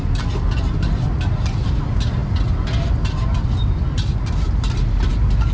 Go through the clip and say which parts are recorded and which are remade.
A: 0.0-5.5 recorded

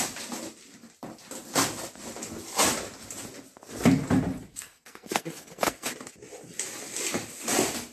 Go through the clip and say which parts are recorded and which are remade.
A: 0.0-4.5 recorded; 4.5-5.9 remade; 5.9-7.9 recorded

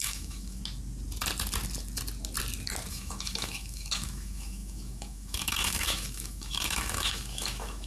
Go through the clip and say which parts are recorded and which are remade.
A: 0.0-0.6 remade; 0.6-2.9 recorded; 2.9-7.9 remade

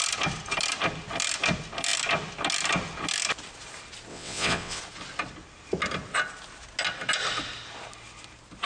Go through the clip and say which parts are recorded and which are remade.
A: 0.0-4.1 recorded; 4.1-4.8 remade; 4.8-8.7 recorded